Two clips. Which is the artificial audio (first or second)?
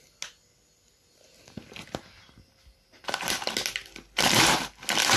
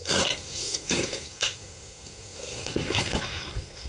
second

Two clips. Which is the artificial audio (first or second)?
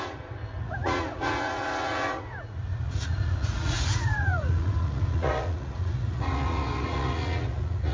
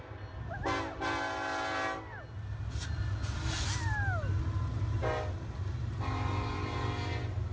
first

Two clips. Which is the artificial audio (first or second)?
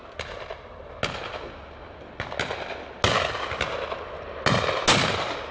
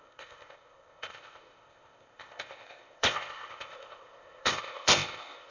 second